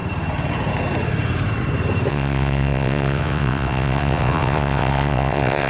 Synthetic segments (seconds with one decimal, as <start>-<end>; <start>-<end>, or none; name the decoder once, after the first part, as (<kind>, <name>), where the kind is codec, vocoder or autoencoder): 2.1-5.7 (vocoder, WaveNeXt)